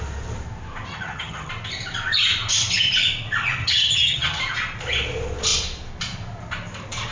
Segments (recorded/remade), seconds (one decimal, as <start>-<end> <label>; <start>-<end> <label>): 0.0-0.9 recorded; 0.9-1.5 remade; 1.5-3.6 recorded; 3.6-4.4 remade; 4.4-7.1 recorded